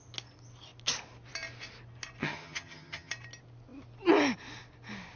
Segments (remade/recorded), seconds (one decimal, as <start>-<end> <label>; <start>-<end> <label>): 0.0-2.2 recorded; 2.2-3.1 remade; 3.1-5.2 recorded